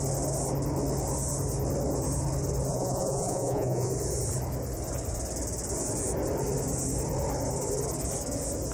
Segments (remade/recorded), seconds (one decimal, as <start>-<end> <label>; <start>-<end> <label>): 0.0-2.7 recorded; 2.7-3.9 remade; 3.9-8.7 recorded